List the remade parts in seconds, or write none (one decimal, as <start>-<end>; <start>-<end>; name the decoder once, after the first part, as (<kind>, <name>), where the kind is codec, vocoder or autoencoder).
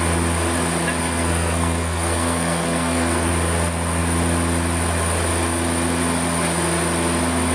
1.0-3.3 (codec, SNAC)